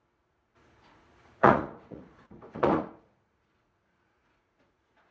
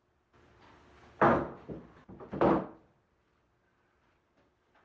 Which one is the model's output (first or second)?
first